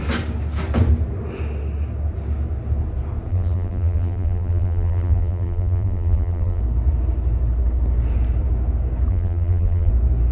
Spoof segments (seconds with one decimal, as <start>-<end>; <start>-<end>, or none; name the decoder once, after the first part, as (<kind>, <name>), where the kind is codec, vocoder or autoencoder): 3.3-6.6 (vocoder, BigVGAN v2); 9.1-9.9